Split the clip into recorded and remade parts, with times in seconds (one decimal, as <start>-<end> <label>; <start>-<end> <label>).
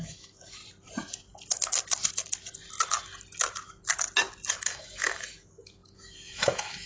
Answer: 0.0-0.6 remade; 0.6-4.5 recorded; 4.5-6.9 remade